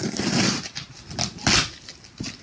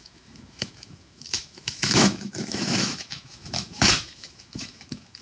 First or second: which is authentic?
first